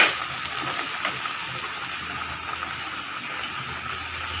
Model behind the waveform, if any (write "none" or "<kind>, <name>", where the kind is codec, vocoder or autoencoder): none